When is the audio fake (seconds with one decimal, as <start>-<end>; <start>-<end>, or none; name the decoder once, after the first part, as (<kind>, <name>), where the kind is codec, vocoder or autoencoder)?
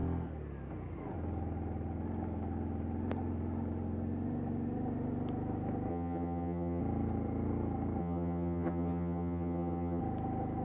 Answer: 5.9-6.8 (vocoder, HiFi-GAN); 8.0-10.0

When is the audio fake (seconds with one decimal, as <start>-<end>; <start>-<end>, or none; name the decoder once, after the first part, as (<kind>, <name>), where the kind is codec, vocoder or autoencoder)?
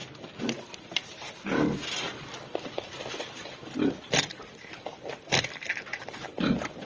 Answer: 4.9-5.7 (vocoder, BigVGAN v2)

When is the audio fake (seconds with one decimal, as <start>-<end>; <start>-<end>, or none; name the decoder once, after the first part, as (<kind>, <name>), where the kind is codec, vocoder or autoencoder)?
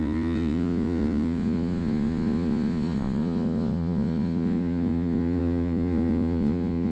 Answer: 0.0-6.9 (vocoder, Vocos)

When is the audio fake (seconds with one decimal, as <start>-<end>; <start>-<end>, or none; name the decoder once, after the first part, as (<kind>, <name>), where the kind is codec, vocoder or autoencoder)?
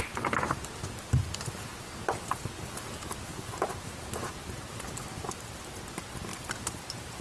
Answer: none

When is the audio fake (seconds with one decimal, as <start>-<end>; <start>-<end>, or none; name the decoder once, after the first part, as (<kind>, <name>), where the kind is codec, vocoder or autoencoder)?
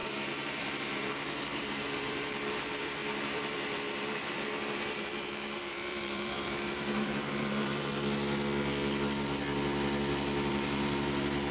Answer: 0.0-7.9 (vocoder, BigVGAN v2); 10.5-11.5